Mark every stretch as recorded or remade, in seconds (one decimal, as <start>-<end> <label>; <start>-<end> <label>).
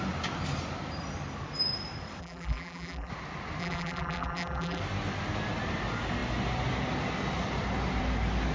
0.0-2.2 recorded; 2.2-3.1 remade; 3.1-3.6 recorded; 3.6-4.8 remade; 4.8-8.5 recorded